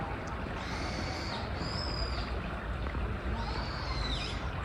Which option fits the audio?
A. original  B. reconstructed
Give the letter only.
A